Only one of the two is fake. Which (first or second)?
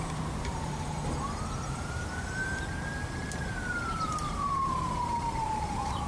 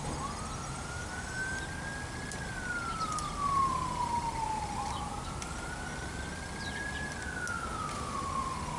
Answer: first